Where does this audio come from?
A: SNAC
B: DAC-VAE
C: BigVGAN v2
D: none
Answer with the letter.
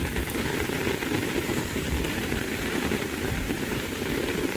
C